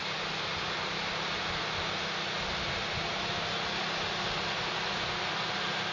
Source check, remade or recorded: recorded